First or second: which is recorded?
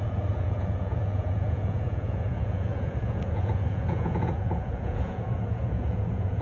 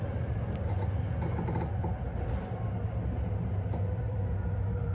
second